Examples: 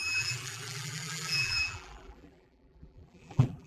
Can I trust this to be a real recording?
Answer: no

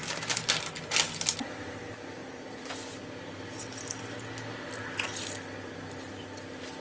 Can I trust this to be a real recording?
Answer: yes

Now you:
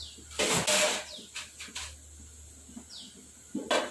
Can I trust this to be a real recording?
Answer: yes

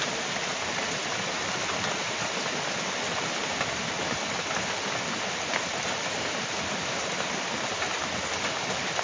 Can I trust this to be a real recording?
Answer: yes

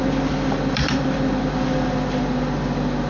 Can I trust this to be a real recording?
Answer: no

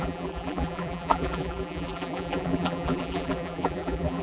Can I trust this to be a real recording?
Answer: no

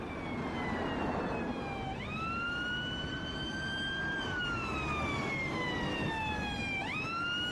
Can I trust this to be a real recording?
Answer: yes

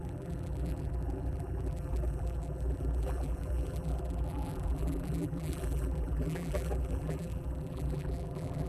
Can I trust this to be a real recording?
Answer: no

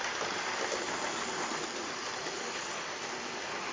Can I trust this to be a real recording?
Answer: yes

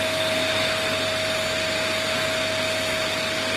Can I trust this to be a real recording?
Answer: yes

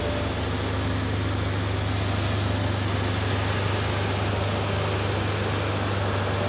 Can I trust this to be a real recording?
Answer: yes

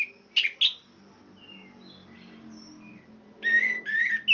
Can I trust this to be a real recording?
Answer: yes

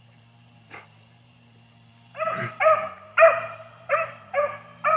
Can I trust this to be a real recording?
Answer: no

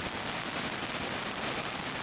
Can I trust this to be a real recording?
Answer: yes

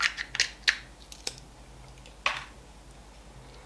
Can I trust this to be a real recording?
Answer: yes